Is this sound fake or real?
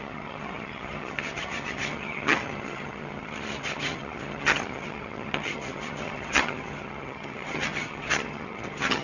fake